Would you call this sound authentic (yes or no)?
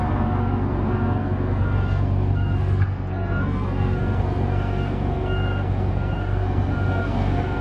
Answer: no